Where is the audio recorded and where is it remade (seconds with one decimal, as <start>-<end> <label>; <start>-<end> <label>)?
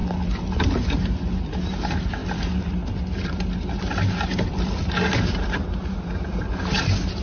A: 0.0-2.2 recorded; 2.2-6.5 remade; 6.5-7.2 recorded